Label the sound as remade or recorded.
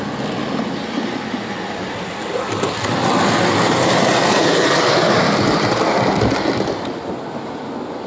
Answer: recorded